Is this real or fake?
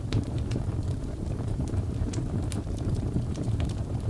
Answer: fake